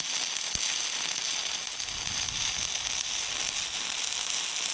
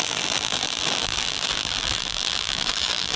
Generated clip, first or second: second